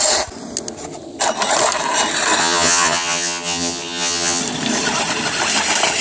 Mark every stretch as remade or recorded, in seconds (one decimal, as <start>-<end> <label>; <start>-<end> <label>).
0.0-2.4 recorded; 2.4-4.4 remade; 4.4-6.0 recorded